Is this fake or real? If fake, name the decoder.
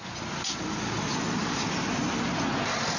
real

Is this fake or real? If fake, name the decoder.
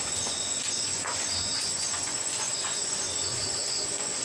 fake, vocoder, Vocos